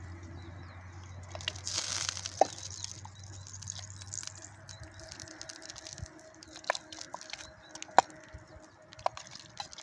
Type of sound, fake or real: real